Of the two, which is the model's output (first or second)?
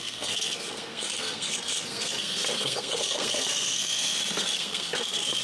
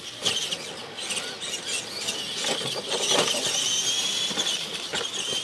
first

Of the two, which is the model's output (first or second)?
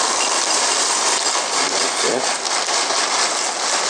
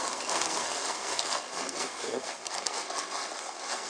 second